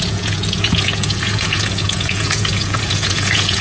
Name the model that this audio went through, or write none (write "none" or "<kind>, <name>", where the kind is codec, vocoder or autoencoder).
vocoder, Vocos